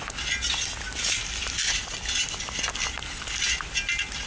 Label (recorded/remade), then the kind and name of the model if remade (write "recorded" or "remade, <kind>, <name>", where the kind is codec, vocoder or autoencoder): recorded